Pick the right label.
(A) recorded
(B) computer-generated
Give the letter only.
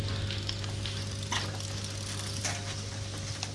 A